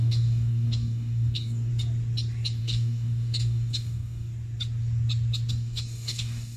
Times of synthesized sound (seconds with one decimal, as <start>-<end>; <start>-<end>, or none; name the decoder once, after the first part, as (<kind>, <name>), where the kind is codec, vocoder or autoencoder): 0.0-1.7 (codec, DAC); 2.6-4.3; 5.5-6.6